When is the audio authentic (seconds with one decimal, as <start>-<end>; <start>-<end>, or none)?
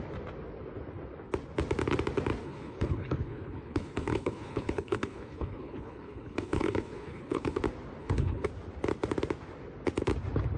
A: 0.0-2.4; 7.6-8.0; 8.5-10.6